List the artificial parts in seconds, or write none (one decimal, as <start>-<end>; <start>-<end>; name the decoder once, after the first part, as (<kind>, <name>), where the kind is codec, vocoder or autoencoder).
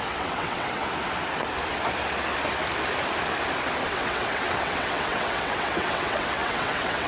0.0-0.8 (vocoder, WaveNeXt); 3.8-7.1